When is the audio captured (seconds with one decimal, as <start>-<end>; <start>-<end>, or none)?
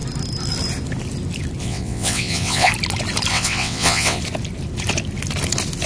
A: 0.0-1.6; 2.7-3.3; 4.2-5.9